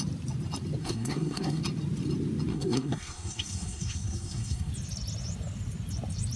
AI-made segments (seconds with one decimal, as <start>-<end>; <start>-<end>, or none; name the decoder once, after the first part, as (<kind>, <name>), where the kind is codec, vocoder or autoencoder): 0.8-1.6 (codec, SNAC); 2.5-4.7